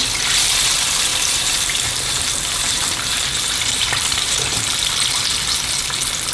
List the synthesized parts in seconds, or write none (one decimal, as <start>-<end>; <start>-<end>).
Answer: 1.1-4.9